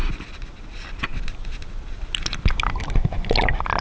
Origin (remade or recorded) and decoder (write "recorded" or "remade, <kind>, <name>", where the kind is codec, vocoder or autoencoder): recorded